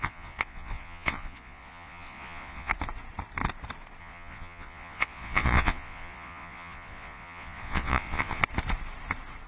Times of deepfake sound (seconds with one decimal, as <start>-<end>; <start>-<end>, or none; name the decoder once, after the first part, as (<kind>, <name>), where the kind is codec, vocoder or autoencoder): 0.0-2.7 (vocoder, Vocos); 4.0-8.4